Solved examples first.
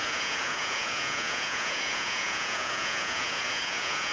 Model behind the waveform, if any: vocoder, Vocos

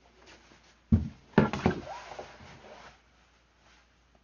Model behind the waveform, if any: none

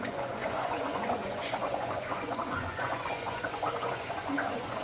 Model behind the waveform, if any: vocoder, Vocos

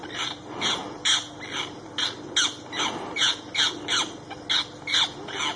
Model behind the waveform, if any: none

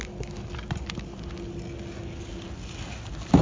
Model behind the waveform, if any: none